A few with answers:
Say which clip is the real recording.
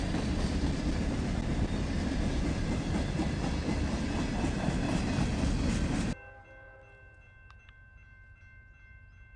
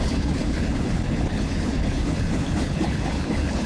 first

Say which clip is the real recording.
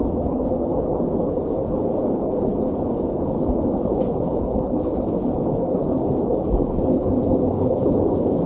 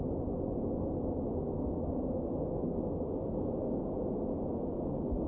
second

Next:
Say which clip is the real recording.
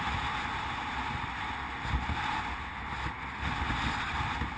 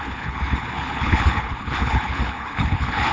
first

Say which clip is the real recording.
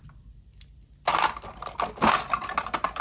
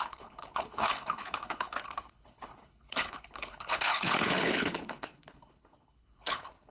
first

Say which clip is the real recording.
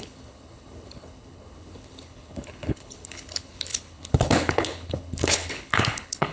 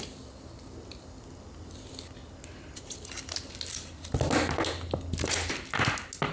second